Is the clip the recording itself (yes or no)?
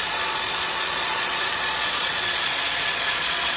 no